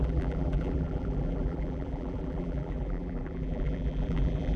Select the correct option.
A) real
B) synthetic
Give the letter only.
B